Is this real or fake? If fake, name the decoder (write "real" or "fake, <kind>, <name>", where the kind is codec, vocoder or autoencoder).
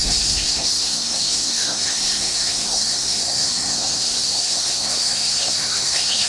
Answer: fake, codec, SNAC